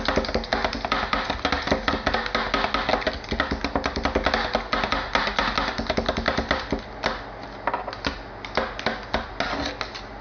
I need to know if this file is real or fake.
real